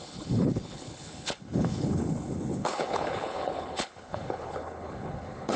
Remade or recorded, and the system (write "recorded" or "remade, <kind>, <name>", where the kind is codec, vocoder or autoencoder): remade, codec, HILCodec